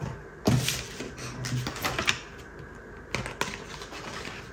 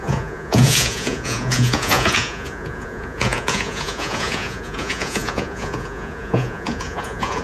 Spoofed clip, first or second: second